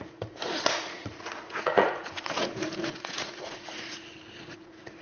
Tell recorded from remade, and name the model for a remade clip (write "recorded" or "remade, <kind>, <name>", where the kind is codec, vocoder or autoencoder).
remade, vocoder, Vocos